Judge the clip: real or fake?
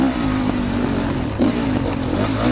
real